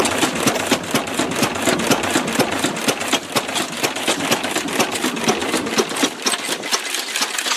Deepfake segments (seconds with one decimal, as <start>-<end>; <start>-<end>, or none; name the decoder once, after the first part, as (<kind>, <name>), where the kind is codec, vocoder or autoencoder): none

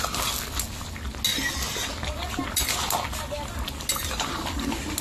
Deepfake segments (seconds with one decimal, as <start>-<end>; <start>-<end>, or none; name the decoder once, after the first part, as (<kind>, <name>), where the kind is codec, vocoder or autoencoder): none

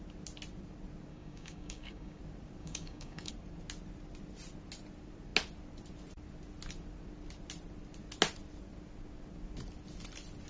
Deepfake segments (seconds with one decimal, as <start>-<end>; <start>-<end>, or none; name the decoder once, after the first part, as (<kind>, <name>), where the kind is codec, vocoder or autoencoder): 1.1-2.2 (codec, DAC); 2.6-3.3

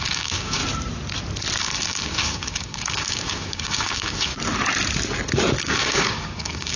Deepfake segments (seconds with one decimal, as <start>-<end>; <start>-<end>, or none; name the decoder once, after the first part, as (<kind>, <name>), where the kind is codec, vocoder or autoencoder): 0.0-0.6 (codec, DAC); 1.6-4.3; 5.6-6.8